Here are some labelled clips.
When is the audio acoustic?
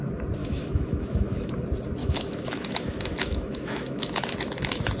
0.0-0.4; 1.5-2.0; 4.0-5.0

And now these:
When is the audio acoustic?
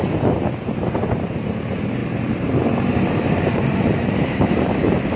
0.0-2.0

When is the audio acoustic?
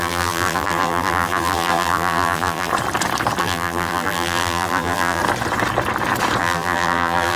2.7-3.4; 5.2-6.4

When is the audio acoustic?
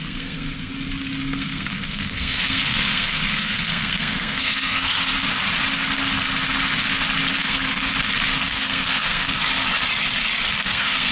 0.7-1.2; 5.1-7.4; 7.9-8.5; 9.4-10.6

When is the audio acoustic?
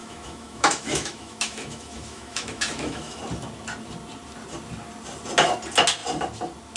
3.2-6.8